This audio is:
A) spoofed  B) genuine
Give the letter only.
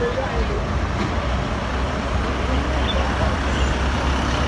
B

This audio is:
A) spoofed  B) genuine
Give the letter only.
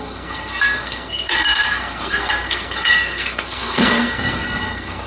A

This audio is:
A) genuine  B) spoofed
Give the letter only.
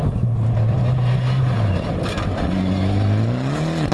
A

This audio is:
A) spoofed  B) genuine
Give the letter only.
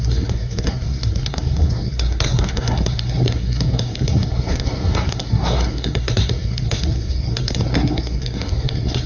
A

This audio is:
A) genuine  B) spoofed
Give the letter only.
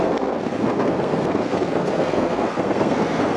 B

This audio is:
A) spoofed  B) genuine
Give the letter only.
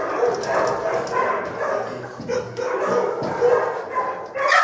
B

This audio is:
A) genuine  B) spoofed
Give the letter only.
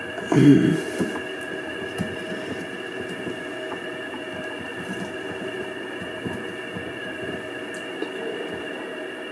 A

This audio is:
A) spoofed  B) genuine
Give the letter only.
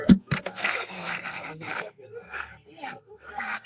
A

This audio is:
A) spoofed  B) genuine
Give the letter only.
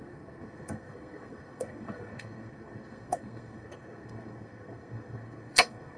A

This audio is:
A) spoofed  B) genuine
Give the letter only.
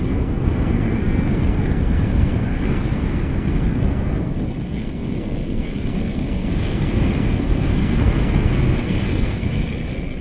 A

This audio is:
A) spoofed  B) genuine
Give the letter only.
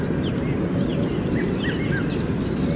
B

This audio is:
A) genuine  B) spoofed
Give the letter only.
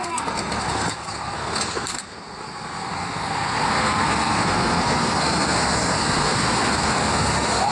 B